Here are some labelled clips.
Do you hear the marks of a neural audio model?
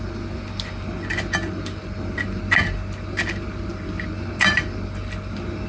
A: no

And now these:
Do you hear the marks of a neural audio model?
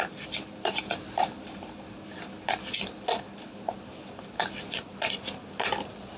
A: no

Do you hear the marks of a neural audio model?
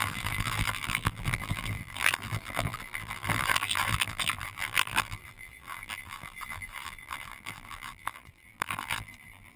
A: yes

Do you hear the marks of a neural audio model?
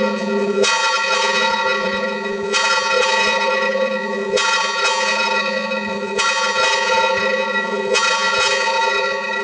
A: yes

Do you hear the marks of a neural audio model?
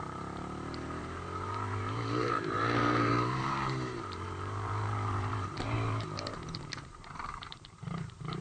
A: yes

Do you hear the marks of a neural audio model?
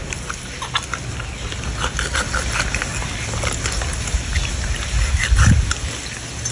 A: no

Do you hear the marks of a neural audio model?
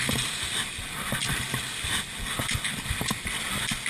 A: no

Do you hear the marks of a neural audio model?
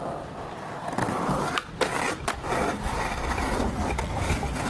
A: no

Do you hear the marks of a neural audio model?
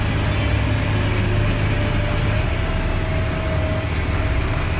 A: no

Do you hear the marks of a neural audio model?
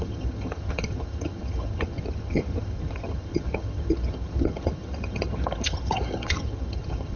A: yes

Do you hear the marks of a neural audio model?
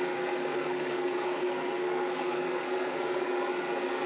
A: yes